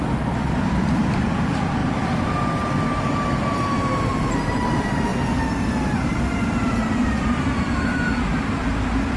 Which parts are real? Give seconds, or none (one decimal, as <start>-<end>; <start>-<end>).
1.8-3.0; 5.1-5.8

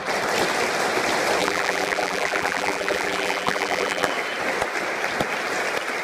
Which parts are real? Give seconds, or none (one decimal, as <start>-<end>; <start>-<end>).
0.0-1.4; 4.1-6.0

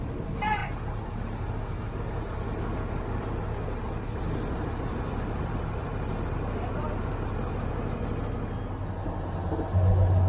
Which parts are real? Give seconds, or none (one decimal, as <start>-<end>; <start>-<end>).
0.0-10.3

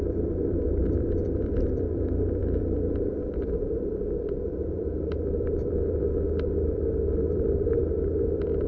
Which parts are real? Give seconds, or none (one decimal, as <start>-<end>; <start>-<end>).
none

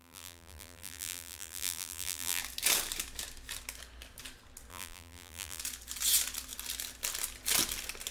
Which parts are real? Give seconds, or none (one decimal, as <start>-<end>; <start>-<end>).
2.4-4.7; 5.6-8.1

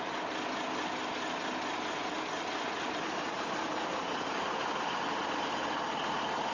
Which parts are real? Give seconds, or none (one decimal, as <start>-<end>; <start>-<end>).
0.0-2.0; 5.9-6.5

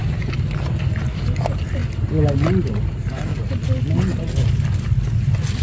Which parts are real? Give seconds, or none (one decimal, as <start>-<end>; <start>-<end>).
1.8-2.5; 3.3-4.5

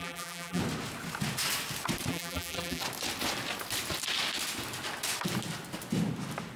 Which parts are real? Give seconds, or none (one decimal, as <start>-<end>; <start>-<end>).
0.6-2.1; 2.8-6.6